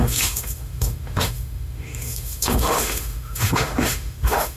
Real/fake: fake